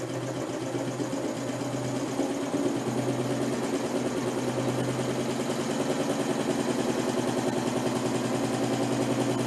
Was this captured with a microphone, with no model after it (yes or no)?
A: yes